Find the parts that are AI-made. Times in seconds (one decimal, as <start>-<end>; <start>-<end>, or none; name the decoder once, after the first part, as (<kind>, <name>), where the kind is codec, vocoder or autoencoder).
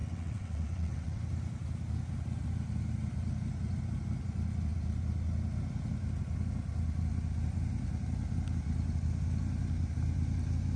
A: 0.0-1.2 (vocoder, WaveNeXt)